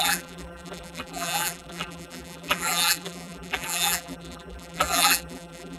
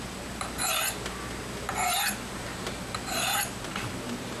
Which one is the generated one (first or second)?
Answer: first